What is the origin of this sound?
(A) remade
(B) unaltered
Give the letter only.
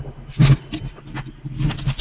B